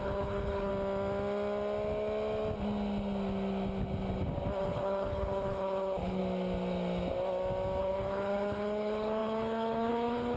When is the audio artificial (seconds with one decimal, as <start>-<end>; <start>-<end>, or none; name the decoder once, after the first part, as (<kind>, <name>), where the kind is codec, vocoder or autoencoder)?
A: 0.0-0.7 (codec, HILCodec); 4.6-6.2; 7.8-10.4

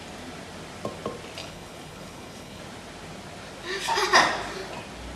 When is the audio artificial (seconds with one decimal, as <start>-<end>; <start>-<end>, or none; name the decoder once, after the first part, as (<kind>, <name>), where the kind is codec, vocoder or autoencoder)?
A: 1.4-2.6 (codec, HILCodec)

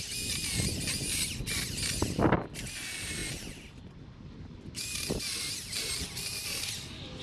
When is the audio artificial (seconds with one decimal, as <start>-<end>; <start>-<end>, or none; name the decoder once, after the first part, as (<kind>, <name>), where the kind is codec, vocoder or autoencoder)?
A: none

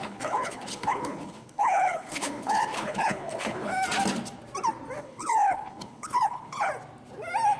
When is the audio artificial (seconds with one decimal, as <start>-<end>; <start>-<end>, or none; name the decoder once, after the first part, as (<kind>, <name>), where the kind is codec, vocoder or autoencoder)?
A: 0.0-3.7 (codec, HILCodec); 5.0-6.7

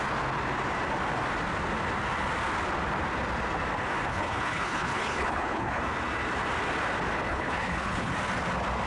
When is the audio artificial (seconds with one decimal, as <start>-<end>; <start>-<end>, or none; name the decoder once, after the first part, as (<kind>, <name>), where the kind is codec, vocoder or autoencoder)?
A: 4.1-5.8 (codec, HILCodec); 7.3-8.1

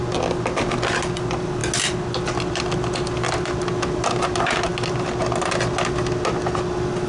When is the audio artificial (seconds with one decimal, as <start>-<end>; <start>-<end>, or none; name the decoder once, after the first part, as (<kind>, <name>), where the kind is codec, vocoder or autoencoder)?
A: none

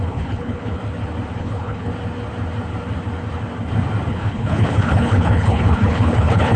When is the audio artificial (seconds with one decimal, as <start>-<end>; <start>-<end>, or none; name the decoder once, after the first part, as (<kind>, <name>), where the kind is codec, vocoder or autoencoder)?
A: 0.0-0.8 (codec, HILCodec); 1.4-1.9; 4.1-6.6